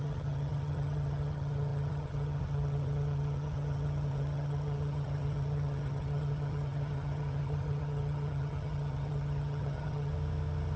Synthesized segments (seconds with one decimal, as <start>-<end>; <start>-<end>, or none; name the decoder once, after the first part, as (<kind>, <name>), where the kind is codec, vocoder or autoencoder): 0.0-10.1 (vocoder, HiFi-GAN)